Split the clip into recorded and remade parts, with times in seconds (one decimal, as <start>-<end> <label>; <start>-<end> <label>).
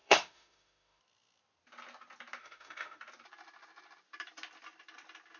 0.0-1.0 remade; 1.0-2.4 recorded; 2.4-3.0 remade; 3.0-5.4 recorded